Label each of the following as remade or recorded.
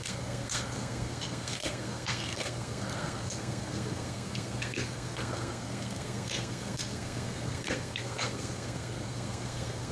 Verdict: remade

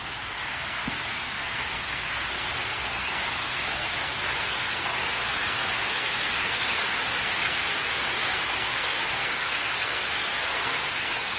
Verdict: remade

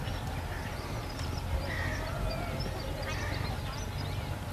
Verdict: recorded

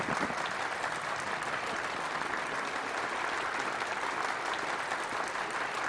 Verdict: recorded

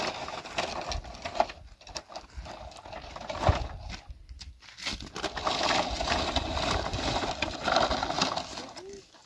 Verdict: recorded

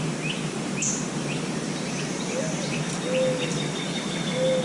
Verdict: recorded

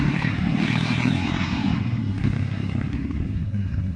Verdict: remade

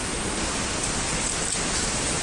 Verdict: recorded